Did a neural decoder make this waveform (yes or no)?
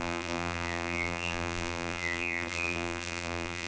yes